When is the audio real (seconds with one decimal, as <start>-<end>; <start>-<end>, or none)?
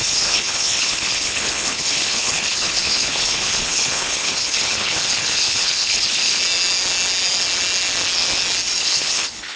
6.4-8.8